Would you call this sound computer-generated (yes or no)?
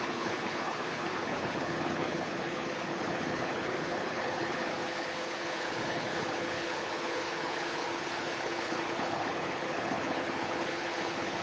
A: yes